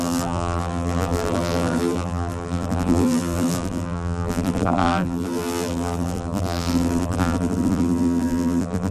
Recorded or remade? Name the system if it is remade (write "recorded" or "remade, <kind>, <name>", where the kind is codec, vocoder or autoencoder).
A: remade, vocoder, BigVGAN v2